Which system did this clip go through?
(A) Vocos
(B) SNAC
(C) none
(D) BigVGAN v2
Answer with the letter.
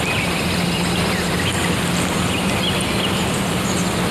C